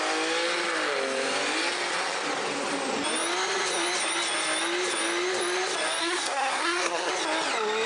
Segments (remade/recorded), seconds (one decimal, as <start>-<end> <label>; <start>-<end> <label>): 0.0-6.0 recorded; 6.0-7.1 remade; 7.1-7.9 recorded